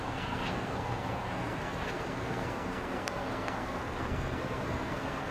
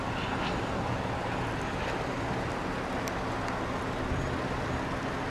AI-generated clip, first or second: first